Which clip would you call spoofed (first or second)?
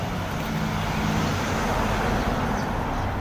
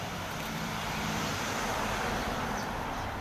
second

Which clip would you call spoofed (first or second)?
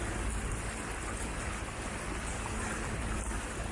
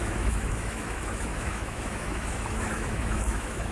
second